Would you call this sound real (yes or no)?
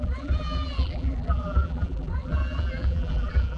no